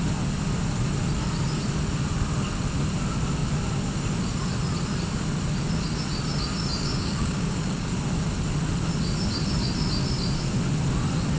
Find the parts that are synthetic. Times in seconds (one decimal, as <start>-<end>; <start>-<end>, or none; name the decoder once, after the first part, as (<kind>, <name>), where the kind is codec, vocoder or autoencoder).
6.8-7.9 (codec, DAC)